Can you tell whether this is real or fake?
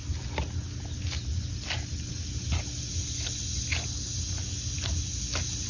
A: real